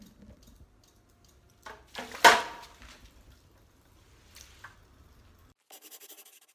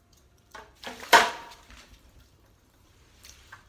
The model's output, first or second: second